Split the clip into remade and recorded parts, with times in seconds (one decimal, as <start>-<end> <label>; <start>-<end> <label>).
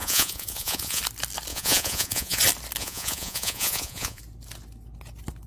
0.0-1.0 remade; 1.0-1.5 recorded; 1.5-2.4 remade; 2.4-2.8 recorded; 2.8-4.2 remade; 4.2-5.5 recorded